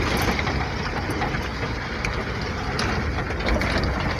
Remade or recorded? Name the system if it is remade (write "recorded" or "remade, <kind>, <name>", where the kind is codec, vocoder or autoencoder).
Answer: recorded